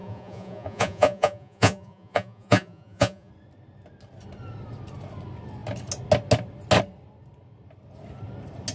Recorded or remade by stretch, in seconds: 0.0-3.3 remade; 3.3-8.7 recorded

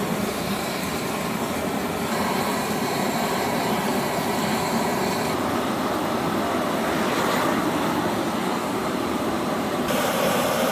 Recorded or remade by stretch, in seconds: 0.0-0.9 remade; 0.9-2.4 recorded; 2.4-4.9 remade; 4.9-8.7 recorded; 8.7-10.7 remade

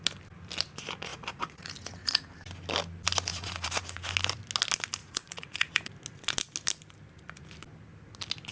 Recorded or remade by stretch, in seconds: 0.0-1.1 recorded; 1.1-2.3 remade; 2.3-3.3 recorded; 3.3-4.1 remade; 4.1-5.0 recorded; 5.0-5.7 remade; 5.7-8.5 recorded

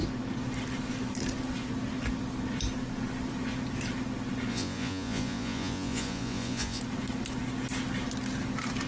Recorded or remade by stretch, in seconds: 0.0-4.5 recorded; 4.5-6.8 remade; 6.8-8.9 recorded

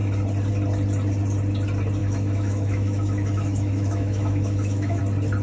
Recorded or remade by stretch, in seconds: 0.0-2.0 recorded; 2.0-5.0 remade; 5.0-5.4 recorded

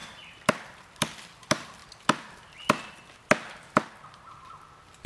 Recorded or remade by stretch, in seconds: 0.0-1.8 remade; 1.8-4.4 recorded; 4.4-5.1 remade